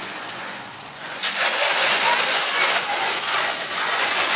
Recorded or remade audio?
remade